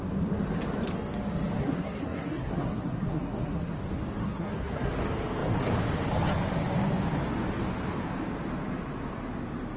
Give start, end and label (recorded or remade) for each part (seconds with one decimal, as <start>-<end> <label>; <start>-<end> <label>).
0.0-1.6 recorded; 1.6-3.7 remade; 3.7-4.2 recorded; 4.2-4.9 remade; 4.9-9.8 recorded